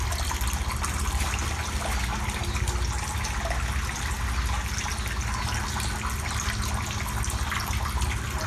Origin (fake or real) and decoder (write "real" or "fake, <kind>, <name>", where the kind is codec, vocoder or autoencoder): real